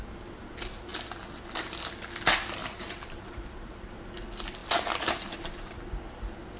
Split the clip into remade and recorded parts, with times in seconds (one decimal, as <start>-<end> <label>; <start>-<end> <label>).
0.0-2.6 recorded; 2.6-3.9 remade; 3.9-4.6 recorded; 4.6-5.8 remade; 5.8-6.6 recorded